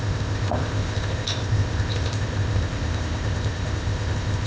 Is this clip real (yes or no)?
no